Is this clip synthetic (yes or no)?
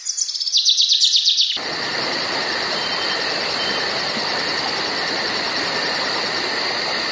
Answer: no